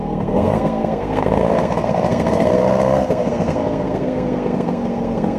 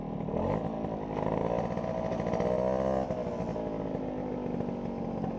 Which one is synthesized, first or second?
first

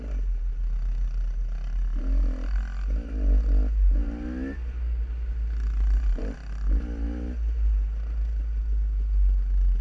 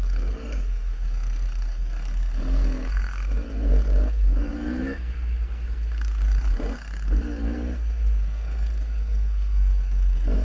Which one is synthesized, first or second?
second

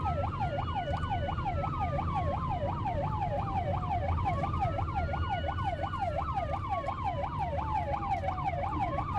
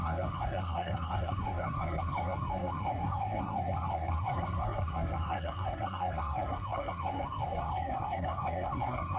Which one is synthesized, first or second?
second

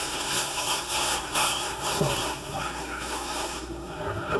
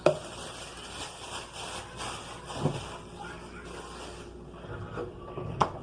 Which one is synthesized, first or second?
first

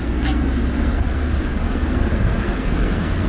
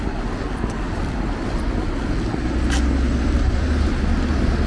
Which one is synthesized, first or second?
first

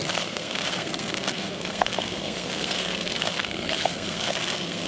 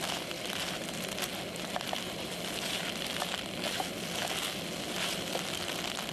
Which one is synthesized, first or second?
first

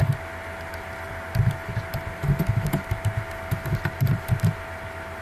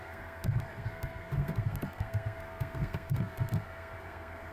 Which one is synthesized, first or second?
second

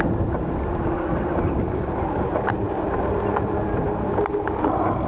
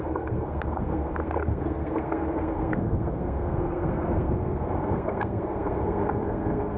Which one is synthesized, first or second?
second